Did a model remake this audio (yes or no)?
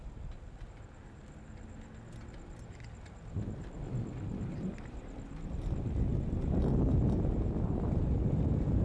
no